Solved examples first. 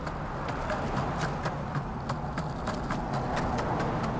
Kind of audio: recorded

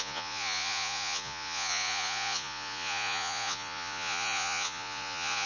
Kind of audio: remade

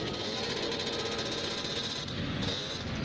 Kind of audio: remade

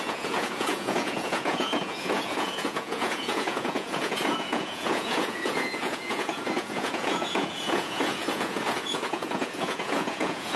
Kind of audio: remade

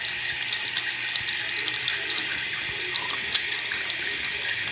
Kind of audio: recorded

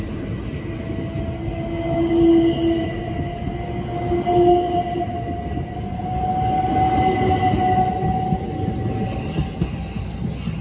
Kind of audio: recorded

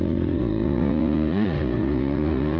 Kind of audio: remade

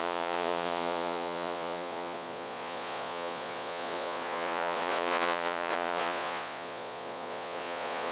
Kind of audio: remade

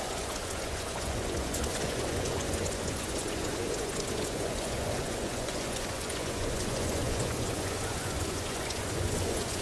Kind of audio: remade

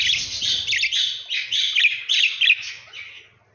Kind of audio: recorded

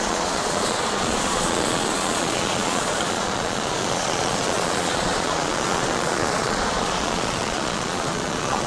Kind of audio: remade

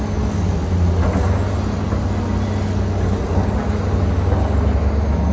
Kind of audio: recorded